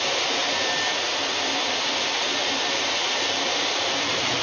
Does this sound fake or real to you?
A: fake